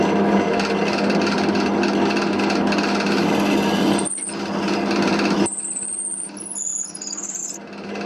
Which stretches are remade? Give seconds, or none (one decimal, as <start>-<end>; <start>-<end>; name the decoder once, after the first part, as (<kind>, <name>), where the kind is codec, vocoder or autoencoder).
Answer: none